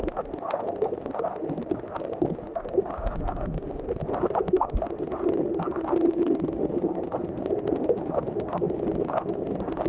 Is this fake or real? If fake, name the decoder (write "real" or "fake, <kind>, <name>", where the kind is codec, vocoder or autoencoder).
fake, autoencoder, DAC-VAE